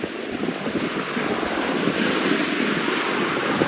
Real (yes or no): yes